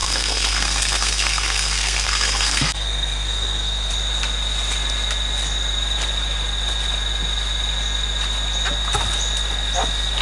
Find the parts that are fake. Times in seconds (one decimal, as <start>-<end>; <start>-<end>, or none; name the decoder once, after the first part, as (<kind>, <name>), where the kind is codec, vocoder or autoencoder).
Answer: 0.0-3.9 (codec, SNAC)